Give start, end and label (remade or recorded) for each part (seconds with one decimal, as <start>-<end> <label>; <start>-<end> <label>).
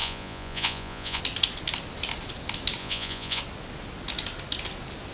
0.0-1.2 remade; 1.2-2.8 recorded; 2.8-3.4 remade; 3.4-5.1 recorded